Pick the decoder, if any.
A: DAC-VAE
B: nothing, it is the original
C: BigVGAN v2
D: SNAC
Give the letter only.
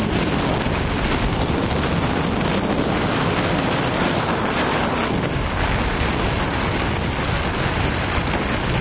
B